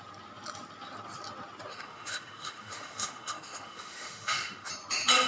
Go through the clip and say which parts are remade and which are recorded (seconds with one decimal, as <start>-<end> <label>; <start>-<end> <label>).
0.0-1.7 recorded; 1.7-4.7 remade; 4.7-5.3 recorded